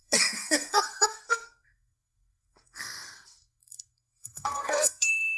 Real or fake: fake